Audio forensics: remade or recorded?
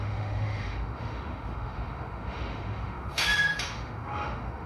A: remade